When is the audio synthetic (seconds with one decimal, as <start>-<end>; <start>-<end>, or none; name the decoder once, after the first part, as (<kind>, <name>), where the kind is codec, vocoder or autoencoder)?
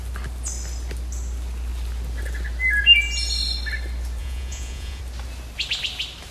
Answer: 4.2-5.0 (vocoder, Vocos)